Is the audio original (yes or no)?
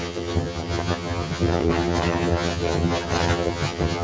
no